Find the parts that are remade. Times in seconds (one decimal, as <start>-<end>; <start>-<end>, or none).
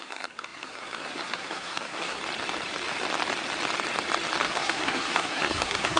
0.0-2.2; 4.4-6.0